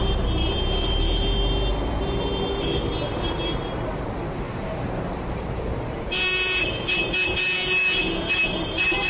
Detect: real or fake fake